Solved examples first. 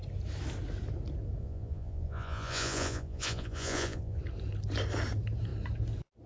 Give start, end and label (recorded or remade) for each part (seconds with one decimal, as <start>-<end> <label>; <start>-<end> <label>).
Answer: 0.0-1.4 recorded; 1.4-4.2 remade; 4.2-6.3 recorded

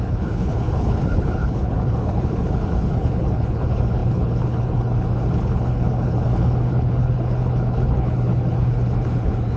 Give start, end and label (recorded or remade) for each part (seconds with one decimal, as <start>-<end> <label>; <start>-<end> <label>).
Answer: 0.0-9.6 remade

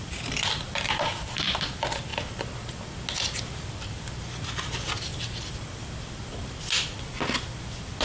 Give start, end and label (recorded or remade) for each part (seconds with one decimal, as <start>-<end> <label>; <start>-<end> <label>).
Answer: 0.0-1.7 remade; 1.7-5.1 recorded; 5.1-6.0 remade; 6.0-8.0 recorded

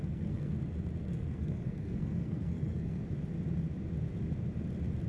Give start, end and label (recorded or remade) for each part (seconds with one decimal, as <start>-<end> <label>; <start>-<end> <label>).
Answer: 0.0-0.5 remade; 0.5-1.0 recorded; 1.0-3.0 remade; 3.0-5.1 recorded

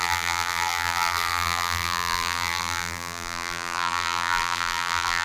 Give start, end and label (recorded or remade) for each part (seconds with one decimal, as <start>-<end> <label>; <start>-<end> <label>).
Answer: 0.0-5.2 remade